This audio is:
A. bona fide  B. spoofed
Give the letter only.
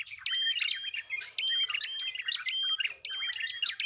A